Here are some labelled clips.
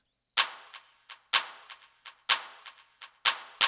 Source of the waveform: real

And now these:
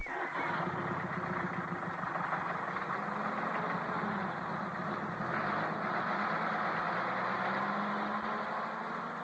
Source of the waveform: real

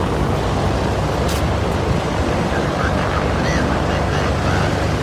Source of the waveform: real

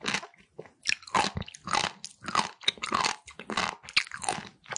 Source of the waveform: real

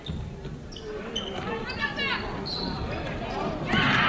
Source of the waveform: real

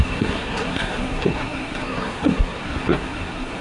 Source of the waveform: fake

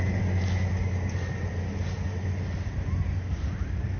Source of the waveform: real